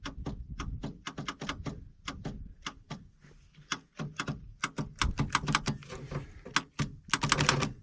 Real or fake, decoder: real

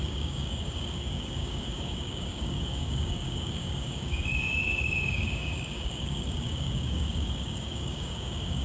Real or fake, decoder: fake, codec, DAC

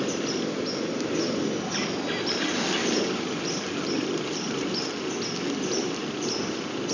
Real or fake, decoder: real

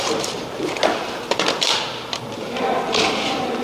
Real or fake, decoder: fake, vocoder, BigVGAN v2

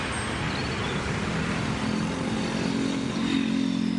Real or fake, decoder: real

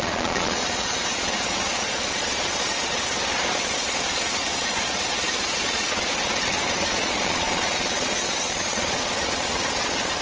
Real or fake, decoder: fake, vocoder, Vocos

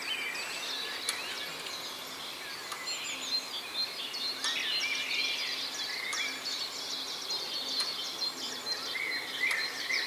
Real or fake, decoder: real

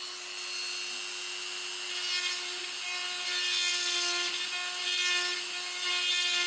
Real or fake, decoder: real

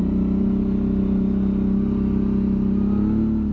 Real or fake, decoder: real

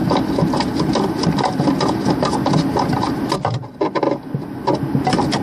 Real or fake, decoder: real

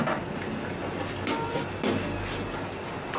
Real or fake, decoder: real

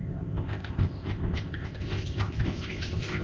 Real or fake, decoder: fake, codec, ZipCodec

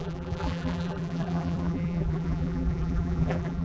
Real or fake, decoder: fake, vocoder, BigVGAN v2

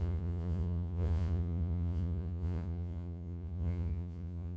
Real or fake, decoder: fake, vocoder, Vocos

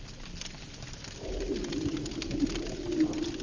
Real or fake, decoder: real